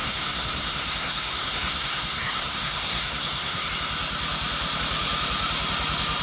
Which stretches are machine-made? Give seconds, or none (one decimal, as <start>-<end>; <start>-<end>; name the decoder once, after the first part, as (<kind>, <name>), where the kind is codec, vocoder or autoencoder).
0.0-3.7 (codec, SNAC)